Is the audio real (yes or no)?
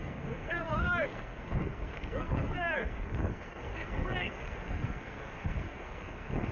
no